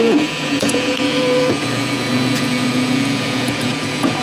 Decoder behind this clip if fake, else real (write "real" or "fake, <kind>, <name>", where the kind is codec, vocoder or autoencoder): fake, vocoder, Vocos